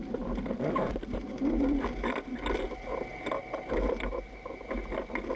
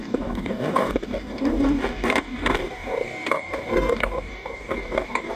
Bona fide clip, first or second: first